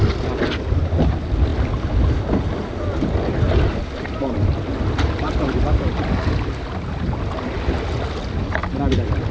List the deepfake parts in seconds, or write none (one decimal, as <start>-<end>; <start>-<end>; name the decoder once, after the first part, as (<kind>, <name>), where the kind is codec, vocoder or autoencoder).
none